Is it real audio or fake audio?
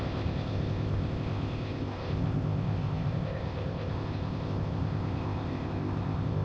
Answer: fake